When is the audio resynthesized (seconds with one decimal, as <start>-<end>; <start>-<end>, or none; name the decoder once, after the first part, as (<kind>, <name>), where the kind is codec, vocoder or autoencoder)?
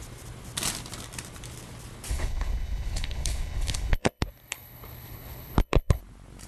2.1-6.0 (codec, HILCodec)